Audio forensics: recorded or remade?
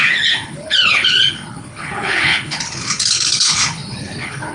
remade